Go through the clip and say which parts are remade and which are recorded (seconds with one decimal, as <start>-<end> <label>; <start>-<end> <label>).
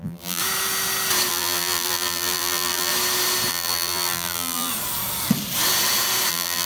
0.0-0.4 remade; 0.4-1.3 recorded; 1.3-2.9 remade; 2.9-3.5 recorded; 3.5-4.7 remade; 4.7-6.3 recorded; 6.3-6.7 remade